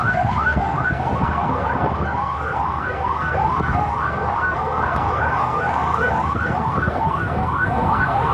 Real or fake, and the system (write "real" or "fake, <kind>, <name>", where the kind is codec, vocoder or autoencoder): fake, codec, SNAC